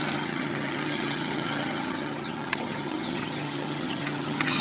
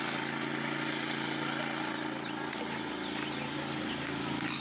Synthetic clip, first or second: first